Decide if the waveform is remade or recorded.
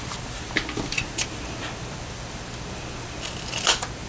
recorded